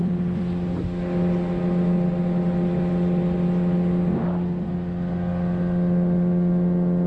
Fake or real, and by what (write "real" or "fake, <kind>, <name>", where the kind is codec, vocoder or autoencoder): real